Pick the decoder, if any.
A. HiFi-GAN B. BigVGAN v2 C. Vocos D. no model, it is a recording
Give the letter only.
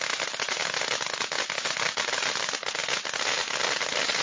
D